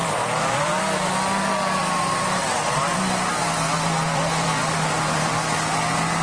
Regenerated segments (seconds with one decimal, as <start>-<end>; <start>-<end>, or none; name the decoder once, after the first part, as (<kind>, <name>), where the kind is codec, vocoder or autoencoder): 0.0-0.8 (vocoder, BigVGAN v2); 1.8-5.3